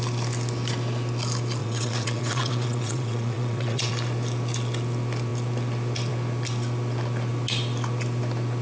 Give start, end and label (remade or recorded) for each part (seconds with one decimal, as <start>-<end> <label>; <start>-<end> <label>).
0.0-1.6 recorded; 1.6-3.9 remade; 3.9-8.6 recorded